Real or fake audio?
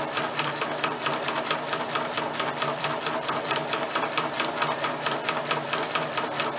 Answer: fake